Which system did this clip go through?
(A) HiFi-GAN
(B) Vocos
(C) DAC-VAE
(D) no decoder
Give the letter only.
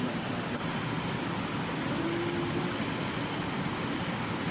D